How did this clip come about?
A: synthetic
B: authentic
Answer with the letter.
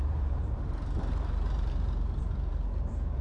A